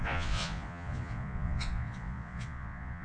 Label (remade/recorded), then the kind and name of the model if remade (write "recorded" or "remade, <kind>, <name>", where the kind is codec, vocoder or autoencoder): remade, vocoder, Vocos